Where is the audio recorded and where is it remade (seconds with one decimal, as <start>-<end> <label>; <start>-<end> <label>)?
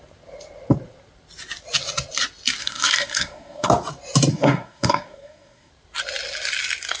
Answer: 0.0-2.6 recorded; 2.6-3.7 remade; 3.7-4.3 recorded; 4.3-5.7 remade; 5.7-7.0 recorded